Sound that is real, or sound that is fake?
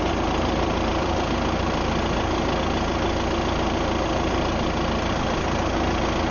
real